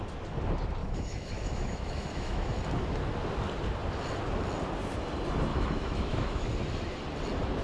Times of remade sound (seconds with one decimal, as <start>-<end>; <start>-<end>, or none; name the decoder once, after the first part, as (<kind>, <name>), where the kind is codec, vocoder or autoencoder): 0.8-2.6 (autoencoder, DAC-VAE); 5.5-6.5